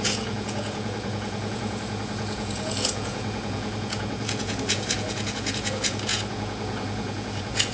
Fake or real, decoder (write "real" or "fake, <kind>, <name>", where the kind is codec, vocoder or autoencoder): fake, vocoder, Vocos